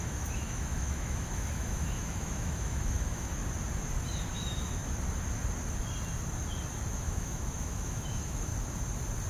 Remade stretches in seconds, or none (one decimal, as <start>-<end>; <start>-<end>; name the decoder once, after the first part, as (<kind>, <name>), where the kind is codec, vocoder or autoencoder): 0.0-3.4 (autoencoder, DAC-VAE); 4.3-4.8; 6.9-8.5